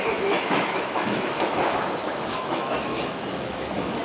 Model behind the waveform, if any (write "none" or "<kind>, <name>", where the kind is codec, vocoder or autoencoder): autoencoder, DAC-VAE